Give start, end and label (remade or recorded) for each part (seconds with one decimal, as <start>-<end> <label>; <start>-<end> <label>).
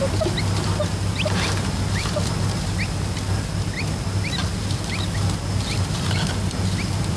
0.0-7.2 recorded